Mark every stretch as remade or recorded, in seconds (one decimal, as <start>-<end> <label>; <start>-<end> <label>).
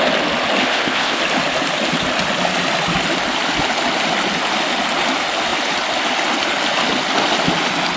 0.0-0.6 recorded; 0.6-1.2 remade; 1.2-8.0 recorded